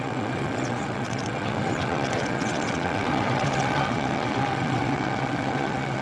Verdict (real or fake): fake